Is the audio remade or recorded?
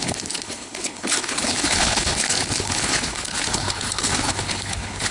remade